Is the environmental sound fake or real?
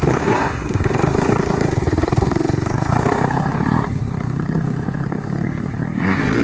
fake